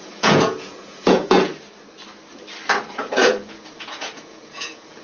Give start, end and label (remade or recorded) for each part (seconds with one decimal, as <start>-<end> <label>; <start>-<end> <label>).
0.0-1.5 remade; 1.5-2.8 recorded; 2.8-5.0 remade